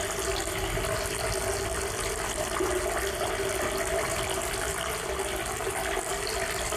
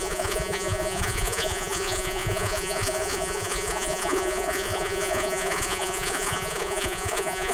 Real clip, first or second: first